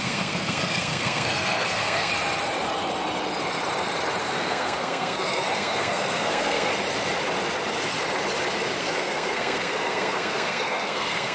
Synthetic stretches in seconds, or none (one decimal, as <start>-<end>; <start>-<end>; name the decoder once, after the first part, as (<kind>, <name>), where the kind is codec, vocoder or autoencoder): 0.0-2.1 (codec, SNAC); 4.2-6.7; 8.8-11.3